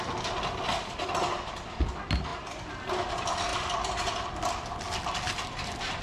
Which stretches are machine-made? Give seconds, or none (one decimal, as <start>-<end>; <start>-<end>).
none